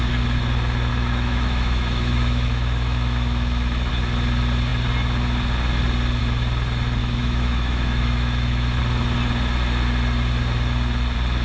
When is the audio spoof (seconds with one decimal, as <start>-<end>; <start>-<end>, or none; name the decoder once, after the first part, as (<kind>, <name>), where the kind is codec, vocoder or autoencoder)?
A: 0.9-3.9 (autoencoder, DAC-VAE); 7.0-8.8

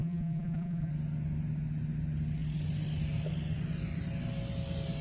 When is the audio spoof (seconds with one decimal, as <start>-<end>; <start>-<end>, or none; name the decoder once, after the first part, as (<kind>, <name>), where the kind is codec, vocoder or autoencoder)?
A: 0.0-0.9 (vocoder, BigVGAN v2)